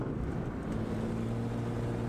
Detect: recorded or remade recorded